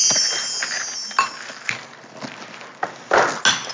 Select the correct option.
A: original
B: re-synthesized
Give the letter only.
A